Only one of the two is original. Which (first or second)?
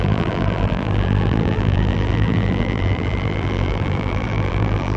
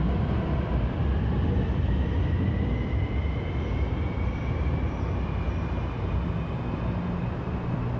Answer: second